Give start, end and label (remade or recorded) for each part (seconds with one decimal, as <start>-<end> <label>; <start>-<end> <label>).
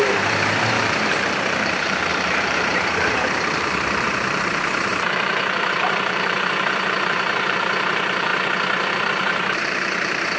0.0-8.3 remade; 8.3-8.9 recorded; 8.9-10.4 remade